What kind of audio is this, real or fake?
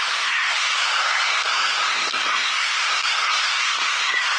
fake